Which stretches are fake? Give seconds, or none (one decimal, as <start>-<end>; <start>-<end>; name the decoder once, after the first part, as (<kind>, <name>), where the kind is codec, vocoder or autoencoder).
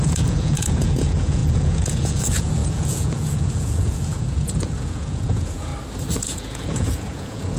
0.0-5.7 (vocoder, Vocos); 6.2-7.6